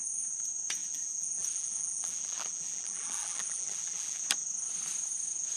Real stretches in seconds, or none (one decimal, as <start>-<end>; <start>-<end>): 0.0-0.8; 4.2-5.6